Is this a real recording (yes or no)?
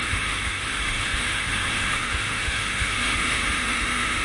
no